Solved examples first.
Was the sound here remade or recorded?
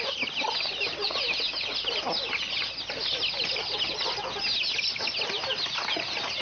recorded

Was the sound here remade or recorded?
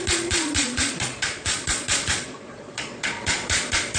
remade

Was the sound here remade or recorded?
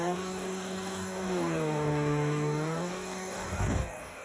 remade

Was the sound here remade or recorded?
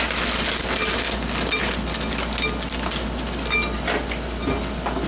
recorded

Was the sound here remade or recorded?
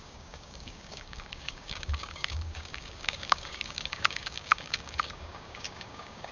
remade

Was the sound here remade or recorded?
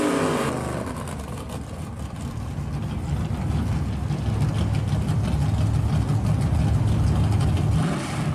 recorded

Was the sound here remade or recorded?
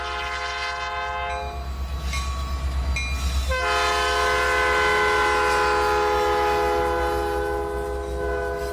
recorded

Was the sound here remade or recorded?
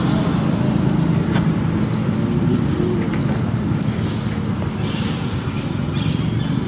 recorded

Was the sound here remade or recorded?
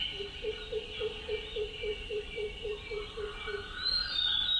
recorded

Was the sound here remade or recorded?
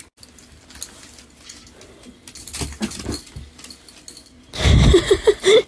recorded